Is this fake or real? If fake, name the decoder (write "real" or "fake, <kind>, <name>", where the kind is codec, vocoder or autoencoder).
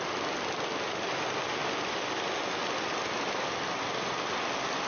real